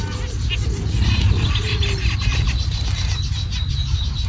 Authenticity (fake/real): real